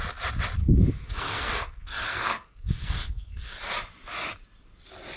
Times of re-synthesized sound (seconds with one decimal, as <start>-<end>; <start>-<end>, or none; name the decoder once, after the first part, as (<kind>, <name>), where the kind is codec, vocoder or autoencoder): 0.6-3.7 (codec, SNAC)